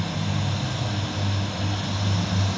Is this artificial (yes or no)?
no